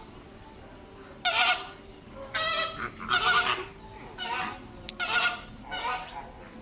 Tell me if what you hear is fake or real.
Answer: real